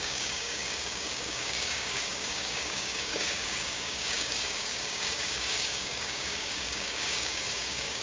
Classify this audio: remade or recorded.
remade